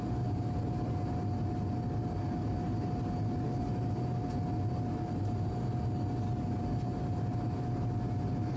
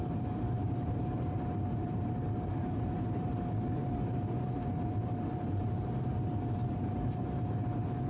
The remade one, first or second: second